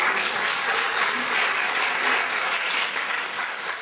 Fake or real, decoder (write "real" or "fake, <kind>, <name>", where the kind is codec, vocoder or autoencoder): fake, codec, DAC